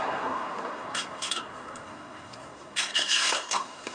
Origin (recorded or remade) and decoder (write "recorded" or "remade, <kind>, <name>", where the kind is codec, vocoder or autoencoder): remade, codec, SNAC